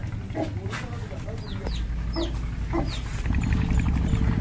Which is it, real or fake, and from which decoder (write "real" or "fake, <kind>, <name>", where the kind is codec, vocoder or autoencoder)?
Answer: real